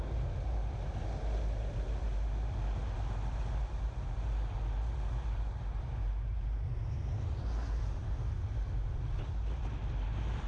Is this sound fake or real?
real